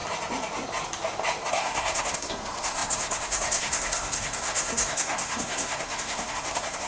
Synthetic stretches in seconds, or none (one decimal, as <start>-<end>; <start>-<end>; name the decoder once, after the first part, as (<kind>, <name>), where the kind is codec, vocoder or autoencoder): 1.5-6.9 (codec, SNAC)